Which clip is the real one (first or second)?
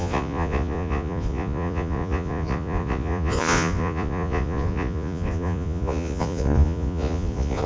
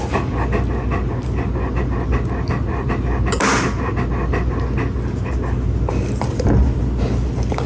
second